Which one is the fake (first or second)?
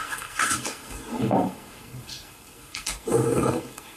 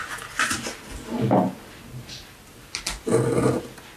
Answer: first